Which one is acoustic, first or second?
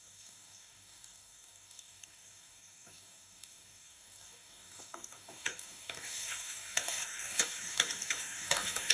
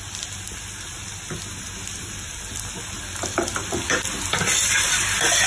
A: second